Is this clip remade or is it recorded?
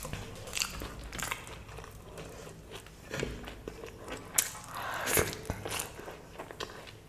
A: recorded